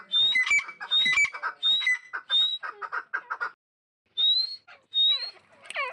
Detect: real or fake real